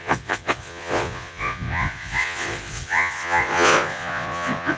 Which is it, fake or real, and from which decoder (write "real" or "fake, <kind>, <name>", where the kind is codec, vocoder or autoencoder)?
fake, vocoder, Vocos